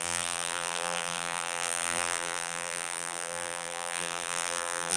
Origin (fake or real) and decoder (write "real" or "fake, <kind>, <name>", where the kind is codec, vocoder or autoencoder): fake, vocoder, BigVGAN v2